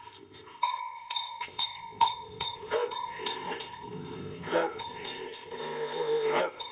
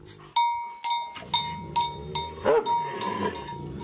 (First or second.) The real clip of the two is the second